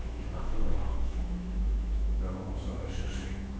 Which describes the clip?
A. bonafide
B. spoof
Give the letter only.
B